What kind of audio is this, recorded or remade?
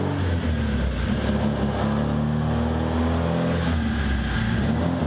recorded